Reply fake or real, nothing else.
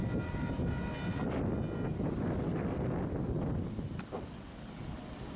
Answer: real